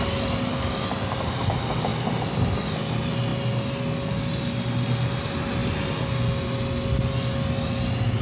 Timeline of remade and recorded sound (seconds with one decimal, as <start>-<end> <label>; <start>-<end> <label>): 0.0-8.2 recorded